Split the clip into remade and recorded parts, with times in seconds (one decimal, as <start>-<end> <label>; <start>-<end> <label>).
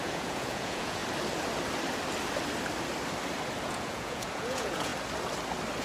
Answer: 0.0-1.0 remade; 1.0-3.6 recorded; 3.6-4.9 remade; 4.9-5.8 recorded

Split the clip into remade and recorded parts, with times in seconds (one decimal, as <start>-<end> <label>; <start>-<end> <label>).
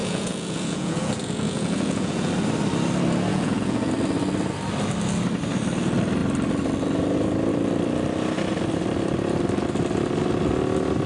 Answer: 0.0-2.3 remade; 2.3-3.3 recorded; 3.3-3.9 remade; 3.9-11.1 recorded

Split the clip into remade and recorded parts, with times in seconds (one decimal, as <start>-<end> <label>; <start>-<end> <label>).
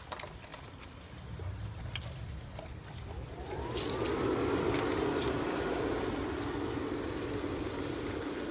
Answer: 0.0-8.5 recorded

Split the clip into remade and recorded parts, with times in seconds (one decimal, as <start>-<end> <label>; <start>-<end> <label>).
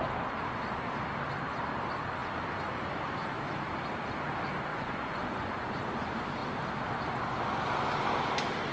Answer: 0.0-4.7 recorded; 4.7-5.9 remade; 5.9-8.7 recorded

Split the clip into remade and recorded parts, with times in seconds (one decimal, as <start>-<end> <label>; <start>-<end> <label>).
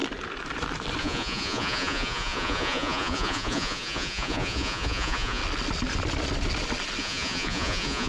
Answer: 0.0-1.0 recorded; 1.0-5.4 remade; 5.4-7.0 recorded; 7.0-8.1 remade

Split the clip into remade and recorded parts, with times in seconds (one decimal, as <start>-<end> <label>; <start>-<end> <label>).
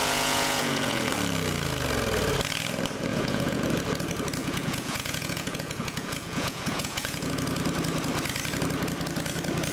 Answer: 0.0-1.1 remade; 1.1-3.1 recorded; 3.1-3.6 remade; 3.6-4.4 recorded; 4.4-7.3 remade; 7.3-9.7 recorded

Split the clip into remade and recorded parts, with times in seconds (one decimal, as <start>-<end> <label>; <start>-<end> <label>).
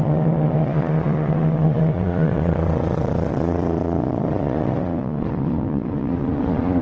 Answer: 0.0-6.8 remade